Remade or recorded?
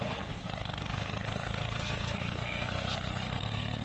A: remade